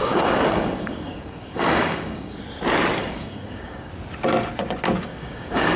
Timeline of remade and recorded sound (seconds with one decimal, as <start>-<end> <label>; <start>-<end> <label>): 0.0-2.4 remade; 2.4-3.0 recorded; 3.0-3.9 remade; 3.9-5.1 recorded; 5.1-5.8 remade